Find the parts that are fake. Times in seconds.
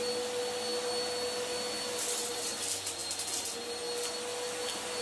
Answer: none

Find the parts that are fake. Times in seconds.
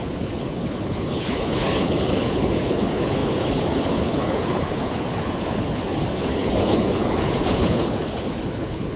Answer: 0.0-9.0 (codec, HILCodec)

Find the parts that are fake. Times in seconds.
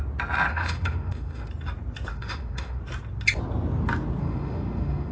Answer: 0.5-1.5 (autoencoder, DAC-VAE); 2.1-2.8; 4.2-5.1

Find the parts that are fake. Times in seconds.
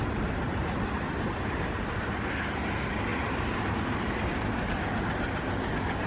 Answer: 3.1-4.6 (vocoder, BigVGAN v2)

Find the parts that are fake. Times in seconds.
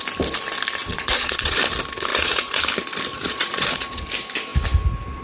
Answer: 0.8-1.6 (vocoder, Vocos); 2.1-2.6; 3.1-4.0